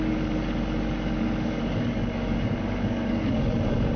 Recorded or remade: remade